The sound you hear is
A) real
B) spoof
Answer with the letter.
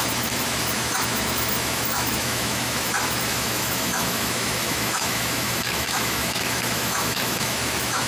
B